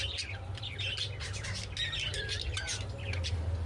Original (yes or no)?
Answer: yes